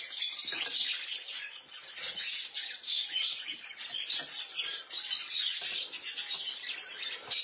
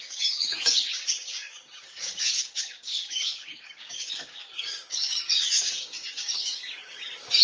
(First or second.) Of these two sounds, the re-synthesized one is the second